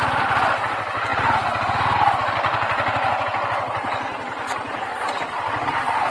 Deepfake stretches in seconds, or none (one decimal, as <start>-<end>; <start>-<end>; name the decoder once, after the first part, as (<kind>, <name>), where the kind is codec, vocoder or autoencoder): none